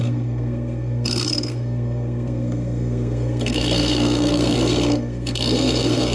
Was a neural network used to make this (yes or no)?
yes